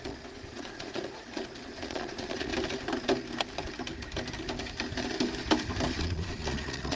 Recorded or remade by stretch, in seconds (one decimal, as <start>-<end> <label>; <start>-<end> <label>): 0.0-2.5 remade; 2.5-6.0 recorded; 6.0-7.0 remade